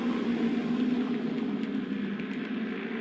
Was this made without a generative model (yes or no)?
yes